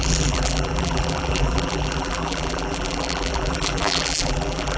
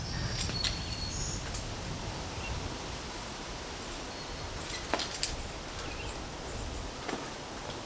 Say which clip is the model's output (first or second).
first